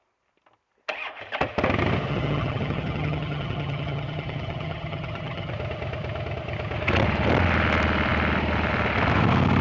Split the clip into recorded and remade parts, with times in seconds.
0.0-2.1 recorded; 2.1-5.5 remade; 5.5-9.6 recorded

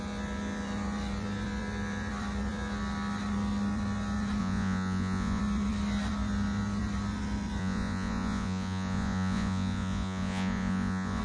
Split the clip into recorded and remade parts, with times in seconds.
0.0-4.4 recorded; 4.4-5.4 remade; 5.4-7.6 recorded; 7.6-11.2 remade

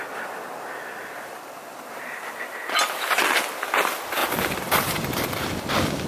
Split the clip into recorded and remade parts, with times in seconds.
0.0-6.1 recorded